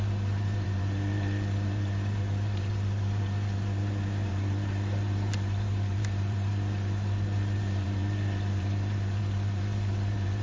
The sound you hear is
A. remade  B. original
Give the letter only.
A